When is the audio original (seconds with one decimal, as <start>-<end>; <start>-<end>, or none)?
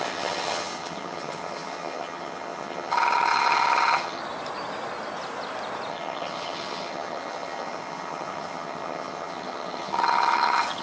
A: 4.2-5.9